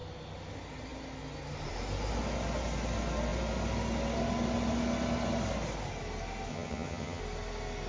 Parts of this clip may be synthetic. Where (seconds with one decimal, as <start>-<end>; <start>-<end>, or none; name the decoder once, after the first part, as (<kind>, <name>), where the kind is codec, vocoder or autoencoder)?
6.5-7.2 (vocoder, HiFi-GAN)